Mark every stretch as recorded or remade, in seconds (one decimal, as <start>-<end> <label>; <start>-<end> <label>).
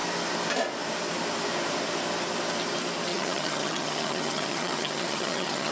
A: 0.0-3.1 recorded; 3.1-5.7 remade